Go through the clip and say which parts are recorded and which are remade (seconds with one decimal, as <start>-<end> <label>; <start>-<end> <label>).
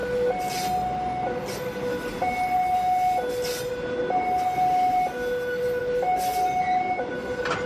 0.0-7.7 recorded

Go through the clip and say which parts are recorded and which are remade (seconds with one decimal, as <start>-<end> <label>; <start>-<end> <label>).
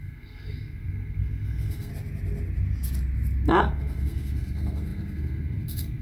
0.0-1.9 remade; 1.9-3.6 recorded; 3.6-6.0 remade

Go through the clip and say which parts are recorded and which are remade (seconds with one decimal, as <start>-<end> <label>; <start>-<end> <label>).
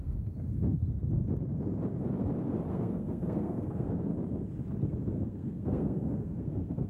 0.0-0.8 remade; 0.8-2.7 recorded; 2.7-4.1 remade; 4.1-5.1 recorded; 5.1-6.9 remade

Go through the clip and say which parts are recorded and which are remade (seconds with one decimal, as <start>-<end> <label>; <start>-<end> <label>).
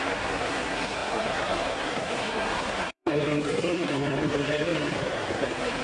0.0-5.8 remade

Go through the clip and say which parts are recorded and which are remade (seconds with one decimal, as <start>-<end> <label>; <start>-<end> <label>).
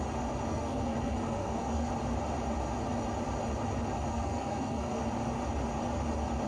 0.0-0.5 recorded; 0.5-1.9 remade; 1.9-4.1 recorded; 4.1-5.0 remade; 5.0-6.5 recorded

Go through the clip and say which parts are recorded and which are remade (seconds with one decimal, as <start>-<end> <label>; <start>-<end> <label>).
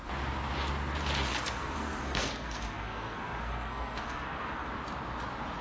0.0-1.3 recorded; 1.3-4.7 remade; 4.7-5.6 recorded